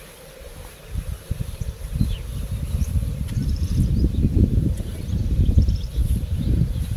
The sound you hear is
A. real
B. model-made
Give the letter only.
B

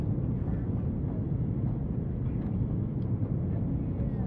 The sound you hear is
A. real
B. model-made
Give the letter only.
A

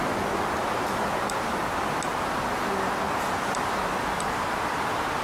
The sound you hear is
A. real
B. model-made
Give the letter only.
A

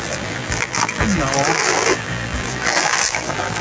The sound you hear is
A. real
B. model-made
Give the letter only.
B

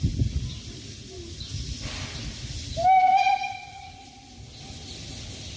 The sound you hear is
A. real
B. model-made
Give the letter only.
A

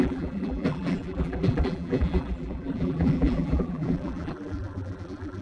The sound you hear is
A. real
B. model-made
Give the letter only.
B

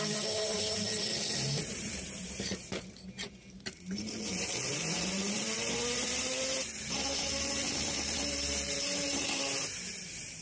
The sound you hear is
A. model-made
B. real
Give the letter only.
A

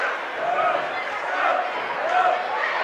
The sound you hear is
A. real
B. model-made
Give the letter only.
A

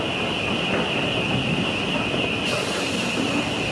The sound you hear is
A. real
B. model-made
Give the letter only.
A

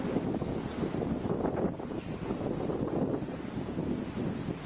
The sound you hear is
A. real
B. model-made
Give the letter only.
B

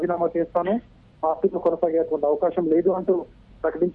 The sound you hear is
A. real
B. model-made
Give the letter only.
A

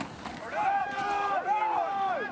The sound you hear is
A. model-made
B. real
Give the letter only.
A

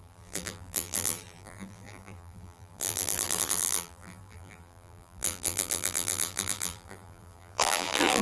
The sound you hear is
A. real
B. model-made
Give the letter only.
B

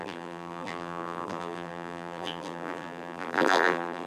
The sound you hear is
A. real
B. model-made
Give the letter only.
B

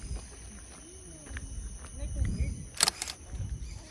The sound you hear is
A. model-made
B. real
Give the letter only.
B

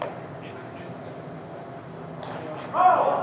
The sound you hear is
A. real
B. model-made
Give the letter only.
A